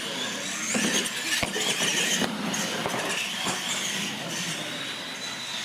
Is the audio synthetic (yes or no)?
no